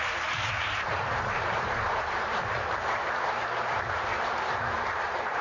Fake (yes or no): yes